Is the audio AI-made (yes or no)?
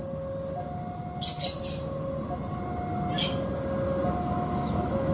no